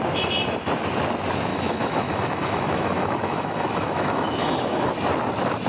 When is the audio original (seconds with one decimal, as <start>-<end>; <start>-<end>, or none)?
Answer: 0.0-1.5; 4.9-5.7